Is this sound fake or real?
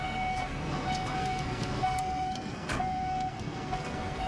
fake